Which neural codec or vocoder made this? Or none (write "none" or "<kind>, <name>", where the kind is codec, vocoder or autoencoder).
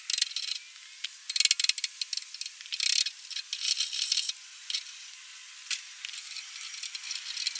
none